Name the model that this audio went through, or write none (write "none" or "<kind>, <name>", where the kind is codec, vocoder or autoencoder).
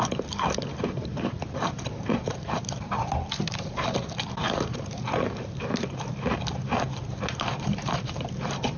vocoder, BigVGAN v2